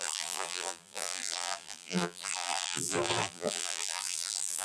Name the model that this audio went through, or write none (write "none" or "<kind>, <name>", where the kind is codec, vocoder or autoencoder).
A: vocoder, BigVGAN v2